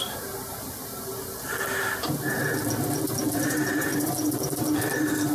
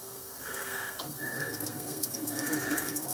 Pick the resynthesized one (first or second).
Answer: second